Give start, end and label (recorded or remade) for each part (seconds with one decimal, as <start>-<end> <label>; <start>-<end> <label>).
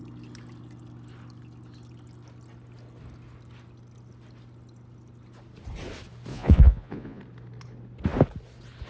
0.0-6.3 recorded; 6.3-7.2 remade; 7.2-8.9 recorded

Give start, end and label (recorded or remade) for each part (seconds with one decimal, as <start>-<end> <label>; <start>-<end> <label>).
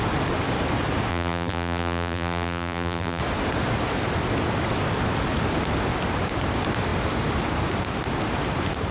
0.0-1.1 recorded; 1.1-3.2 remade; 3.2-8.9 recorded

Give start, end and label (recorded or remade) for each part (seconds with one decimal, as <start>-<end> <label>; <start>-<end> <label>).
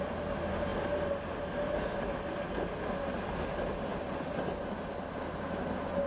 0.0-6.1 recorded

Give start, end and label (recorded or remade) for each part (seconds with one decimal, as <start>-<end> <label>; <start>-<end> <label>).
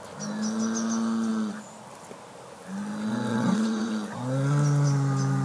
0.0-3.3 recorded; 3.3-3.9 remade; 3.9-5.4 recorded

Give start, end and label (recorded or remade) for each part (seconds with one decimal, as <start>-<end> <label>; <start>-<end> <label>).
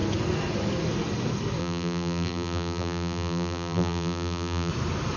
0.0-1.6 recorded; 1.6-4.7 remade; 4.7-5.2 recorded